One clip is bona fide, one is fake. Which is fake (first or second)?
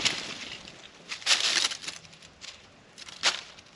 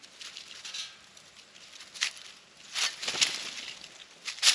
first